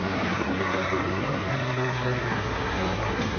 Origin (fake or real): fake